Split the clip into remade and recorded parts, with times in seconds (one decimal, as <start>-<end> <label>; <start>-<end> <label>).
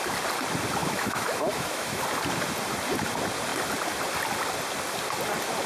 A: 0.0-0.8 recorded; 0.8-2.0 remade; 2.0-5.7 recorded